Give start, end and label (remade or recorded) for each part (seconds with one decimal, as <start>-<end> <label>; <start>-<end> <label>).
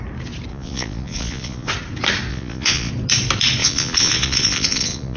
0.0-0.5 recorded; 0.5-1.7 remade; 1.7-2.3 recorded; 2.3-2.9 remade; 2.9-3.6 recorded; 3.6-5.2 remade